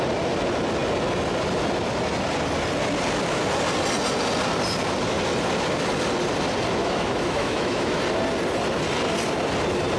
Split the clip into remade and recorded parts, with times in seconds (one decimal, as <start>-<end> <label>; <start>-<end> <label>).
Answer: 0.0-6.8 recorded; 6.8-8.0 remade; 8.0-10.0 recorded